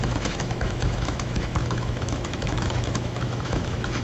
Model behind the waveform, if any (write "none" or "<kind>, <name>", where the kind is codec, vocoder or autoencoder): autoencoder, DAC-VAE